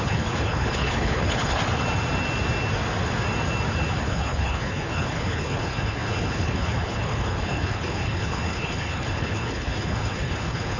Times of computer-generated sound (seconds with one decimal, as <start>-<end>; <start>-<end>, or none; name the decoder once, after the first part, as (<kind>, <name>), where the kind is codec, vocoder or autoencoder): 0.0-1.6 (codec, HILCodec); 4.0-10.8